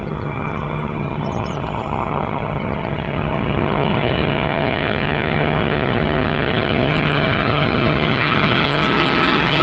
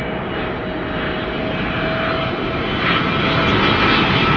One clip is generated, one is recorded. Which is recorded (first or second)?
second